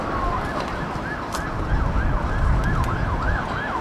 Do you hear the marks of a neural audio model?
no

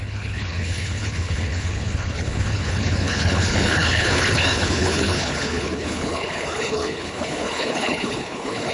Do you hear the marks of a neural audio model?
yes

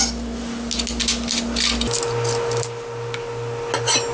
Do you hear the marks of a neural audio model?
no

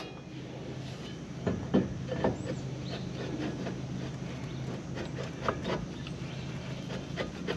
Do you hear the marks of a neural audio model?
no